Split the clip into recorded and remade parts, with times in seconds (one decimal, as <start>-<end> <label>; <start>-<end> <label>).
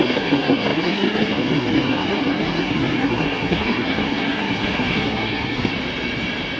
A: 0.0-5.7 remade; 5.7-6.6 recorded